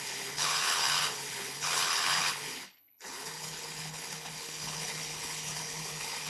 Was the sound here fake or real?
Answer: fake